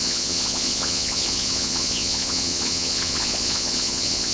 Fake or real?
fake